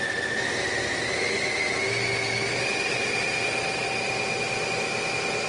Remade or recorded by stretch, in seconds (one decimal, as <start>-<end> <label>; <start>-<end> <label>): 0.0-5.5 recorded